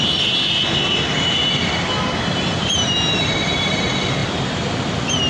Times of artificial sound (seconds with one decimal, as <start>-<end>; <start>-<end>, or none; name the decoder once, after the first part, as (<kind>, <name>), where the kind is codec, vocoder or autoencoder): none